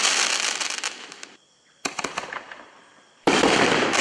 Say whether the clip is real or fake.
fake